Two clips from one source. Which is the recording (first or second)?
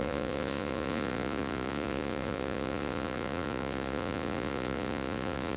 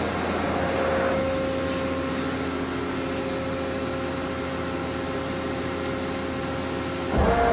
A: second